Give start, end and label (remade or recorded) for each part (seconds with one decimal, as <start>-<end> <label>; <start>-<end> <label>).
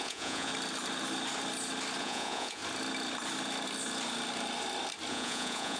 0.0-0.5 remade; 0.5-2.0 recorded; 2.0-2.6 remade; 2.6-5.1 recorded; 5.1-5.8 remade